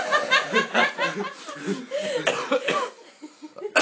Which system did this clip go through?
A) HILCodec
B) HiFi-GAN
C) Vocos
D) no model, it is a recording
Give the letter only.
D